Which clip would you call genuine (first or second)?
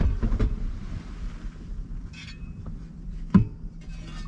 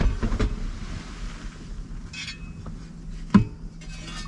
second